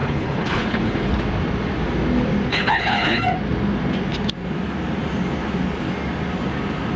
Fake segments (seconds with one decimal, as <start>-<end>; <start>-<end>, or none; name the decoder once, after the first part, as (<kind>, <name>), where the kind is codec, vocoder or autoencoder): 0.0-1.1 (codec, HILCodec); 2.5-3.2